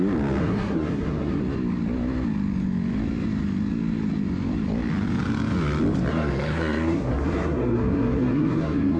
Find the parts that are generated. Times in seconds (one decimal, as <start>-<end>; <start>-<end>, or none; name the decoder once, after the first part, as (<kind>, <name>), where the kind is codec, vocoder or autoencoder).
0.4-1.4 (codec, SNAC); 6.1-9.0